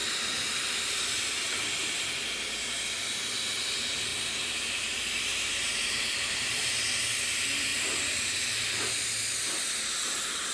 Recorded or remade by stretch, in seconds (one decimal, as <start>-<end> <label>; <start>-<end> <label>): 0.0-4.1 recorded; 4.1-6.6 remade; 6.6-7.7 recorded; 7.7-8.7 remade; 8.7-10.5 recorded